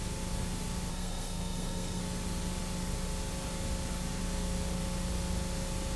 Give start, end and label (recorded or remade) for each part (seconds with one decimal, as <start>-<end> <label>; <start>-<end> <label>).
0.0-0.9 recorded; 0.9-2.0 remade; 2.0-6.0 recorded